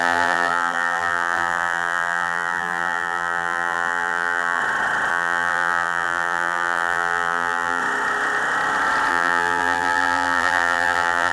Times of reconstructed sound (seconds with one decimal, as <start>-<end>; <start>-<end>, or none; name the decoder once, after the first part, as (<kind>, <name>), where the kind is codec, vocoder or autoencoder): 0.0-4.6 (vocoder, BigVGAN v2); 5.1-7.8; 9.1-11.3